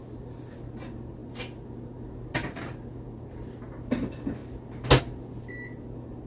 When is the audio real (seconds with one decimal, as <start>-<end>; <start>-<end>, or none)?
0.0-6.3